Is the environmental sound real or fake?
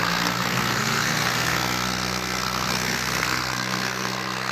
fake